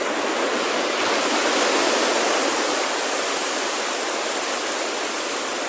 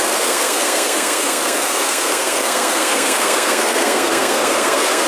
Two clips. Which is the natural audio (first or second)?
first